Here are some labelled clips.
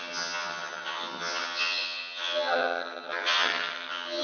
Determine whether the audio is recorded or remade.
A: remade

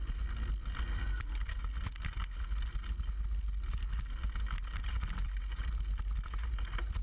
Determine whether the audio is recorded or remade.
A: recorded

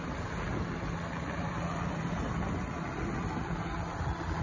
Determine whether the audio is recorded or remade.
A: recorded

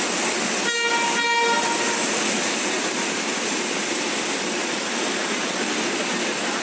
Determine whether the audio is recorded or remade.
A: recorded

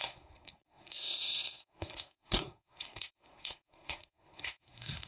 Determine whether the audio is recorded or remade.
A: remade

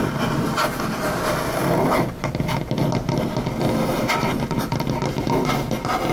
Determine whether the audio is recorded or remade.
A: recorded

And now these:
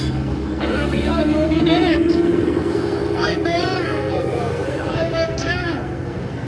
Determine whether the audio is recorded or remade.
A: remade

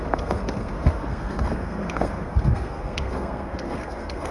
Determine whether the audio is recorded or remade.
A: remade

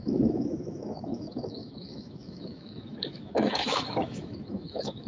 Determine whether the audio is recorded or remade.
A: remade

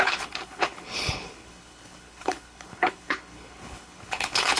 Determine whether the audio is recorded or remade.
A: remade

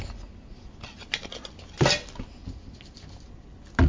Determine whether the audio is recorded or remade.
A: recorded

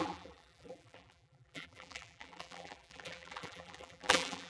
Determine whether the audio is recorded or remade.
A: remade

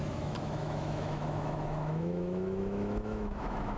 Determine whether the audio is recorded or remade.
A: remade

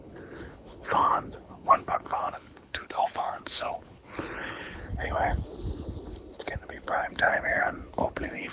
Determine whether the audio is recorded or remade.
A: remade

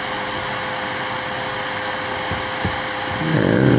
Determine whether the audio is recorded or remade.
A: recorded